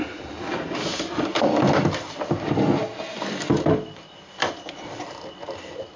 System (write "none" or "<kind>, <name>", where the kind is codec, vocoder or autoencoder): none